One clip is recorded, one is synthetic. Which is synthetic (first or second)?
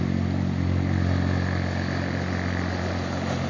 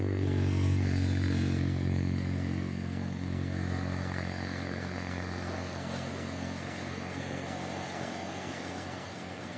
second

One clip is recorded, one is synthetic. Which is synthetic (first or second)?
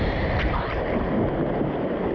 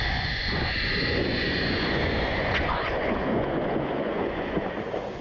second